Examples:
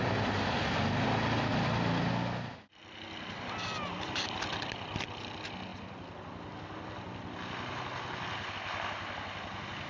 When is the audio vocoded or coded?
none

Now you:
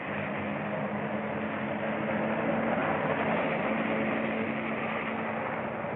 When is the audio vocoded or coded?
none

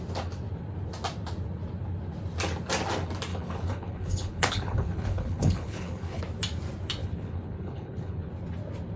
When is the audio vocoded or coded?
3.3-6.2 (codec, HILCodec); 7.0-8.3

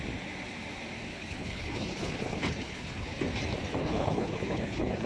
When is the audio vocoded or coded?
1.1-3.2 (codec, HILCodec); 3.8-5.1

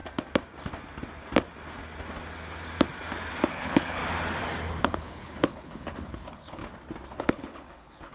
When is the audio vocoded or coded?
3.5-4.0 (codec, HILCodec); 4.8-6.6; 7.1-8.1

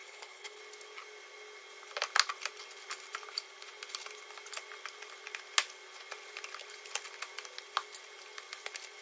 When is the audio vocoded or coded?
0.0-0.6 (codec, HILCodec)

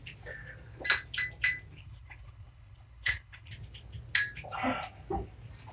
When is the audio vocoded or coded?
1.8-3.5 (codec, HILCodec)

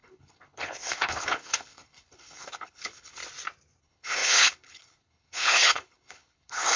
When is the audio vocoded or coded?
0.0-3.2 (codec, HILCodec); 3.8-6.8